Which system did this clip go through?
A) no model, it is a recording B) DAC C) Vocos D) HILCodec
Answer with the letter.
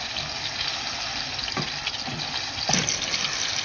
A